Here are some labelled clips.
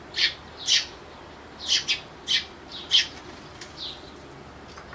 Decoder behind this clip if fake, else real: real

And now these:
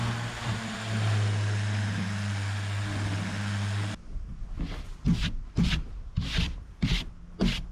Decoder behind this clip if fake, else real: real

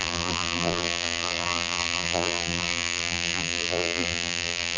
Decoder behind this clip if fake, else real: fake, vocoder, BigVGAN v2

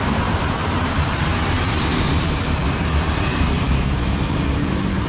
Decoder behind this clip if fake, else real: fake, vocoder, BigVGAN v2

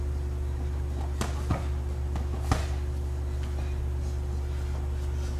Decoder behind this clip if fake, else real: real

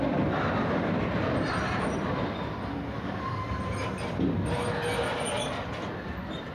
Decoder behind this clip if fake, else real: real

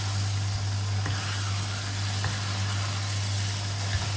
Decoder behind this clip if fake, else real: real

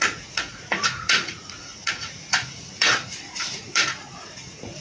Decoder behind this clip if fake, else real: fake, vocoder, Vocos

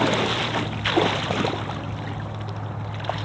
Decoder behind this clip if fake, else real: real